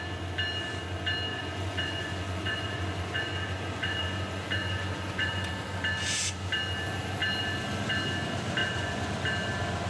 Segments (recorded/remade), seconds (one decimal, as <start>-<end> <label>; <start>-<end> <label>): 0.0-1.3 recorded; 1.3-5.5 remade; 5.5-8.6 recorded; 8.6-9.1 remade; 9.1-9.9 recorded

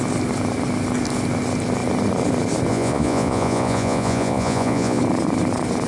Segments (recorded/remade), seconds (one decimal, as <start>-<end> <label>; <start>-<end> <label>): 0.0-2.7 recorded; 2.7-5.0 remade; 5.0-5.9 recorded

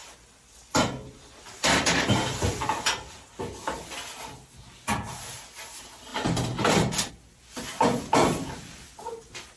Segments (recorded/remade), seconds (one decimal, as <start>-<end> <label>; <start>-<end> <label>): 0.0-3.3 remade; 3.3-6.1 recorded; 6.1-7.1 remade; 7.1-9.6 recorded

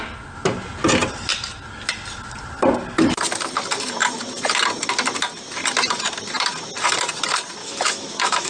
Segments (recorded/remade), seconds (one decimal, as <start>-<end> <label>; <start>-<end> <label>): 0.0-7.6 recorded; 7.6-8.5 remade